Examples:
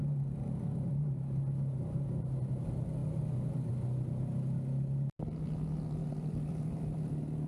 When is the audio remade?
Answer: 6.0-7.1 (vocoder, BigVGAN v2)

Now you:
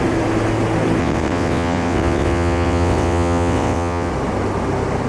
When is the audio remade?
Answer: 1.0-4.1 (vocoder, WaveNeXt)